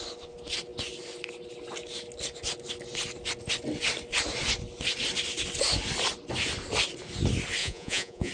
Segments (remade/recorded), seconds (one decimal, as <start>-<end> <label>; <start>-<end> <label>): 0.0-7.6 recorded; 7.6-8.3 remade